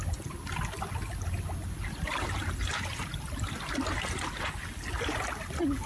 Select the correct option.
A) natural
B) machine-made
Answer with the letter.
A